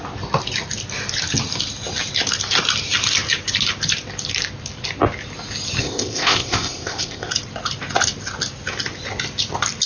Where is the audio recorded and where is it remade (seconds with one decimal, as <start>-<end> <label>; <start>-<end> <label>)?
0.0-5.8 recorded; 5.8-7.3 remade; 7.3-9.9 recorded